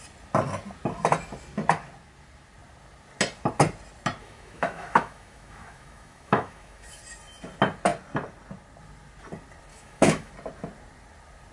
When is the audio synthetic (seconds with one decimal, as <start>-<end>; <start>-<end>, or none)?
4.2-7.0; 9.7-10.3